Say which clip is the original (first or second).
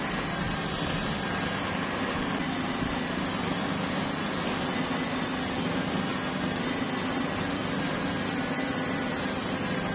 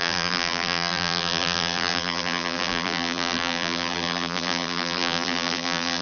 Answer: first